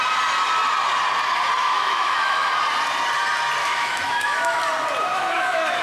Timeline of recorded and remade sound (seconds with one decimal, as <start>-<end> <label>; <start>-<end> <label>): 0.0-1.6 recorded; 1.6-2.5 remade; 2.5-3.6 recorded; 3.6-4.6 remade; 4.6-5.1 recorded; 5.1-5.8 remade